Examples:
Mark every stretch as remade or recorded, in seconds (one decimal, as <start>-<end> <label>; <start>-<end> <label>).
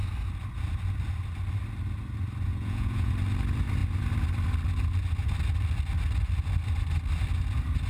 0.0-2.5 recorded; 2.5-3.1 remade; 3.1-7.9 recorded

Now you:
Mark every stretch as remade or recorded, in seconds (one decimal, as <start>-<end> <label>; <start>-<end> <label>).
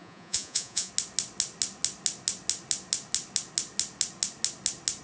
0.0-0.9 remade; 0.9-5.0 recorded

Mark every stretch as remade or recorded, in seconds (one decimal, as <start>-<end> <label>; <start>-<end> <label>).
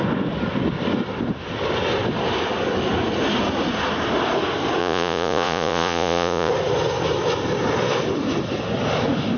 0.0-4.8 recorded; 4.8-6.5 remade; 6.5-9.4 recorded